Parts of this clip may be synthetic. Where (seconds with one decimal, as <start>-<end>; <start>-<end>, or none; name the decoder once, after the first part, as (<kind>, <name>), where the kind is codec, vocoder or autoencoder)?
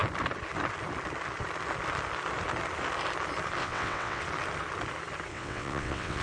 3.6-4.2 (vocoder, WaveNeXt); 5.3-6.2